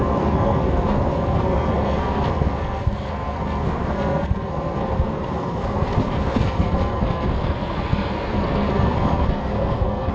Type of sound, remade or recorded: remade